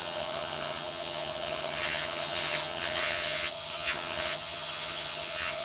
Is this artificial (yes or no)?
yes